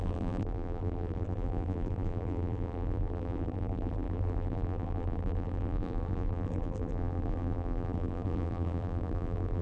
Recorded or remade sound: remade